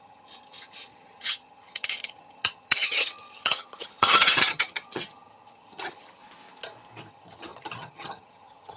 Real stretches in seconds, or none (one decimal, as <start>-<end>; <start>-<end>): 6.2-7.1